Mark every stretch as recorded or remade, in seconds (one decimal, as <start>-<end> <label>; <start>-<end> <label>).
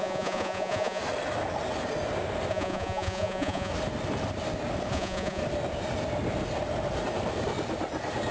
0.0-1.0 remade; 1.0-2.5 recorded; 2.5-3.7 remade; 3.7-4.9 recorded; 4.9-5.4 remade; 5.4-8.3 recorded